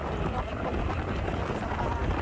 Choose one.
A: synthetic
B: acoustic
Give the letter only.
B